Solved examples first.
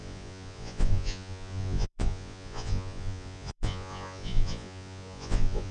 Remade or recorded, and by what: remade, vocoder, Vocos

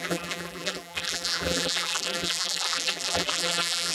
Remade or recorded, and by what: remade, vocoder, BigVGAN v2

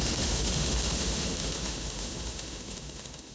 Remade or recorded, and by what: remade, autoencoder, DAC-VAE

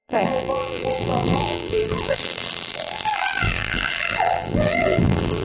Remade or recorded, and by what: remade, vocoder, BigVGAN v2